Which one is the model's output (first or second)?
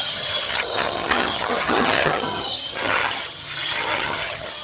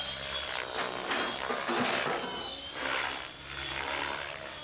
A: first